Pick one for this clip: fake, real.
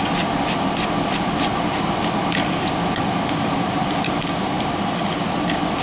real